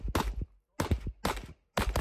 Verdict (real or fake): real